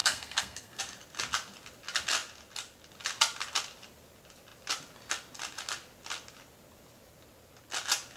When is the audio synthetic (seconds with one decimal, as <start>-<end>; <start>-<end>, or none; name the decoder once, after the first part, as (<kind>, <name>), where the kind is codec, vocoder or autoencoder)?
0.0-0.8 (codec, SNAC)

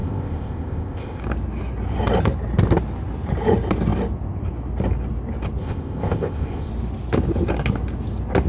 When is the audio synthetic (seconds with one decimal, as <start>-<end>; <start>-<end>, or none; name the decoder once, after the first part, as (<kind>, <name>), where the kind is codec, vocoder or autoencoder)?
0.0-1.2 (codec, ZipCodec); 5.6-6.7

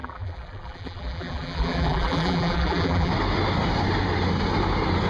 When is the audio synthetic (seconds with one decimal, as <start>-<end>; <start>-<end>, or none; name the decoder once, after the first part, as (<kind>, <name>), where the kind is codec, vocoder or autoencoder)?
0.0-3.1 (vocoder, BigVGAN v2)

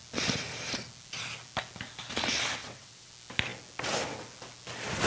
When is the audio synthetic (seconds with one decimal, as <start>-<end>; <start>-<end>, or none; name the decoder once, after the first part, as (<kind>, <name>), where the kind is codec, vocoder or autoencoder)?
2.6-3.1 (vocoder, WaveNeXt)

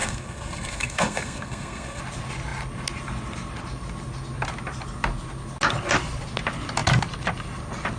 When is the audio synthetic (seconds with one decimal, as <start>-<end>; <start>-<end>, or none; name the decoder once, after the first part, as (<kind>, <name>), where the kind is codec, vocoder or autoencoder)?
0.0-2.0 (codec, SNAC)

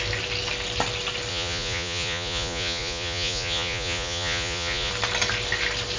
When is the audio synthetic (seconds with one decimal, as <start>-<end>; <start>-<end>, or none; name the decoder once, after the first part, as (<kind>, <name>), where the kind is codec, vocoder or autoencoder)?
1.3-4.9 (vocoder, Vocos)

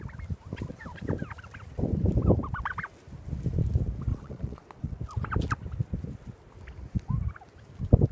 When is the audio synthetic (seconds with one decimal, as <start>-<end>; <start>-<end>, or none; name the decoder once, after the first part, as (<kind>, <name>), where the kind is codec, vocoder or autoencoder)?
4.1-5.0 (vocoder, Vocos)

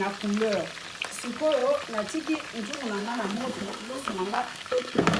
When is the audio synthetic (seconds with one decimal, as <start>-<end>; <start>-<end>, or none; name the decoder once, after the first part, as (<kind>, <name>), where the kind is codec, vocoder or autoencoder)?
3.0-5.2 (codec, SNAC)